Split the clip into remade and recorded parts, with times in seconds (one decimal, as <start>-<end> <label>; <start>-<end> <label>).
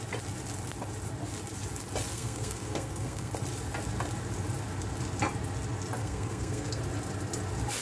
0.0-2.1 recorded; 2.1-3.3 remade; 3.3-6.0 recorded; 6.0-6.8 remade; 6.8-7.8 recorded